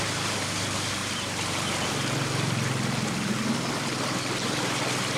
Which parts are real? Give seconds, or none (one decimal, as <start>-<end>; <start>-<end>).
0.0-5.2